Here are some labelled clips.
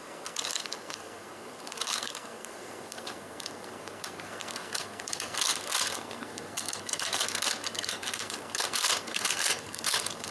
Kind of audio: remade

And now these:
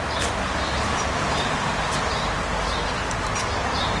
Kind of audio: recorded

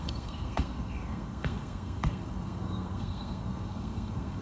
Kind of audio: remade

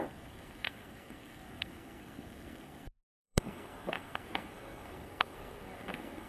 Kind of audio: remade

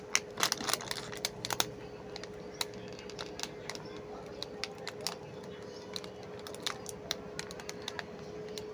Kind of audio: recorded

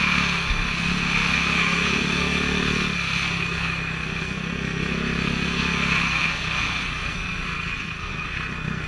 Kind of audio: remade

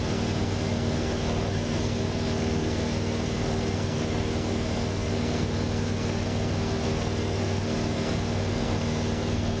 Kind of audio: remade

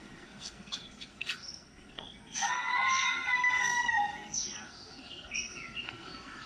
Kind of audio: remade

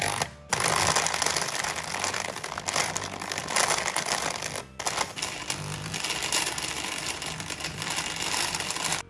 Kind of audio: recorded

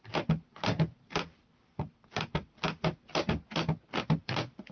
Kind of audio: recorded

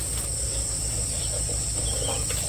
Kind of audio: recorded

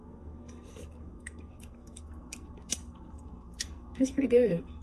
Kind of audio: remade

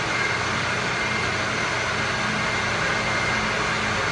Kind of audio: recorded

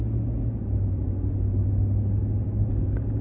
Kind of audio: recorded